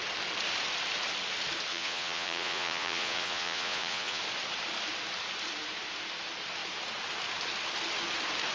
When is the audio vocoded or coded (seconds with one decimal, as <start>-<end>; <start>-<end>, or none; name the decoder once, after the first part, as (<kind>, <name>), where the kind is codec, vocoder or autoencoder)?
1.7-4.2 (vocoder, Vocos)